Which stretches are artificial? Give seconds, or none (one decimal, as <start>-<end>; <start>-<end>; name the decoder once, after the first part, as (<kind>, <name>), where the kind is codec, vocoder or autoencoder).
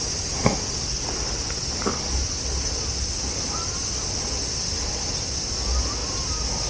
none